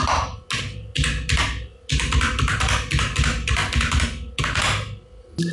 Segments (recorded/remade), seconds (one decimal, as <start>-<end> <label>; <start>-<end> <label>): 0.0-5.5 recorded